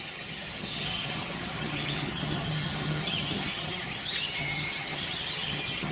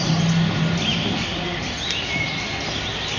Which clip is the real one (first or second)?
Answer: second